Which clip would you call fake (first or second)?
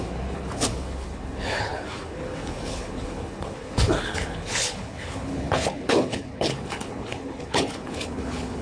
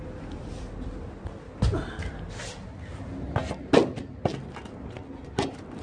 first